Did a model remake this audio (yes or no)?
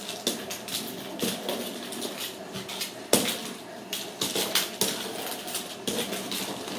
no